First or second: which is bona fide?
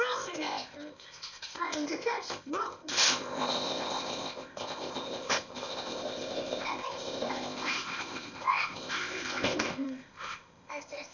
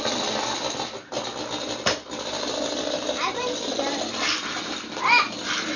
second